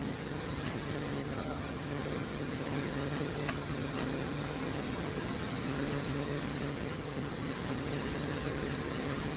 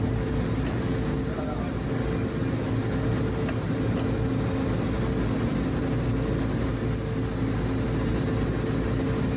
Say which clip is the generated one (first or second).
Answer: first